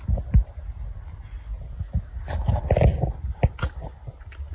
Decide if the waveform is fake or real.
real